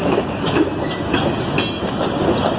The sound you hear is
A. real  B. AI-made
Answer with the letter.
A